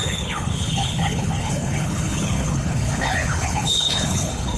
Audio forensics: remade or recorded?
remade